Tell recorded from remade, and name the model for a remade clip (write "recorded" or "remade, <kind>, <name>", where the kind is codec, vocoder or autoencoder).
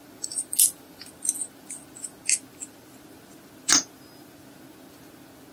recorded